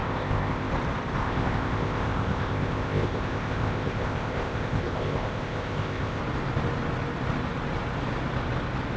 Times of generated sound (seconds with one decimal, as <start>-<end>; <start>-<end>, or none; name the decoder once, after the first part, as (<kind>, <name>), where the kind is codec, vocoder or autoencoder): 0.0-0.7 (codec, ZipCodec); 1.2-6.2